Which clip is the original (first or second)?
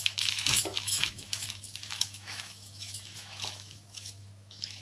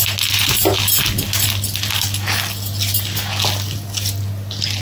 second